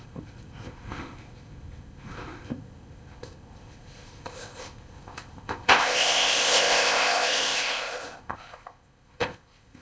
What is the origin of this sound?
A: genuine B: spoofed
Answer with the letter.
B